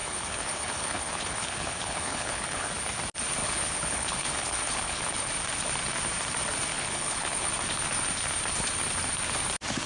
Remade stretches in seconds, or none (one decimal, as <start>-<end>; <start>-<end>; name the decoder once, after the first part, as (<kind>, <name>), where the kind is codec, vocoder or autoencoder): 0.0-2.7 (codec, HILCodec); 3.4-5.3; 6.7-7.5